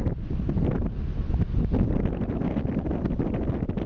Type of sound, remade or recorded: recorded